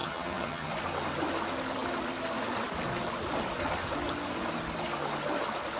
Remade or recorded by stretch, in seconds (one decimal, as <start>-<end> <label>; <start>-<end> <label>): 0.0-0.7 remade; 0.7-5.8 recorded